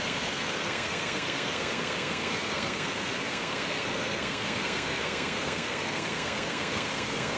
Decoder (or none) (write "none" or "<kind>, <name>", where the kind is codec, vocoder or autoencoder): codec, SNAC